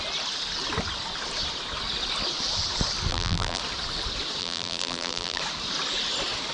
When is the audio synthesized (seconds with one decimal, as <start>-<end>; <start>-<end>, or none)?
3.1-3.6; 4.4-5.4